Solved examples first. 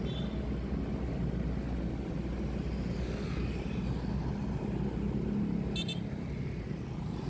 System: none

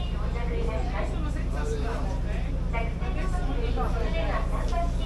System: none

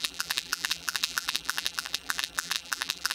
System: vocoder, BigVGAN v2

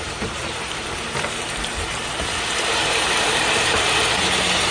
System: vocoder, BigVGAN v2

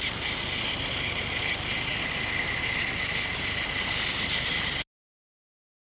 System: none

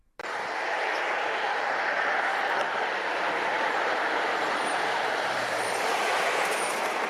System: vocoder, BigVGAN v2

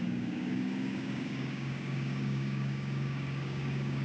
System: codec, DAC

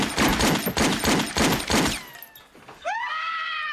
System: none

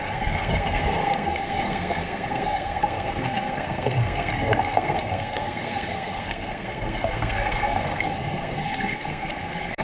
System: codec, SNAC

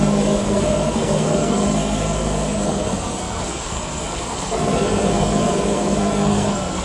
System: codec, SNAC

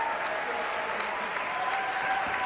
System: none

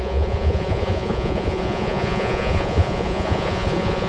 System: vocoder, Vocos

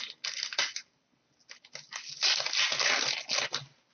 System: none